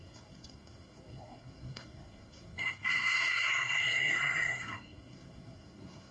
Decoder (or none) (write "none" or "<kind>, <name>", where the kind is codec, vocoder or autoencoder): codec, SNAC